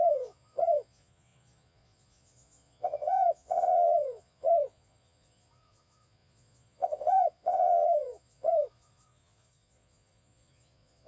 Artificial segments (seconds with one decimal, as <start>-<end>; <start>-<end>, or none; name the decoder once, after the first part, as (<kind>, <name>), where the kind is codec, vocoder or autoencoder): 0.0-11.1 (vocoder, Vocos)